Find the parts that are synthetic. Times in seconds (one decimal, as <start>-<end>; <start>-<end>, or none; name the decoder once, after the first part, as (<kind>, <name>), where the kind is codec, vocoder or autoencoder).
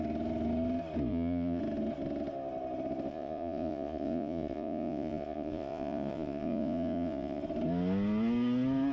1.1-1.6 (vocoder, Vocos); 3.1-7.4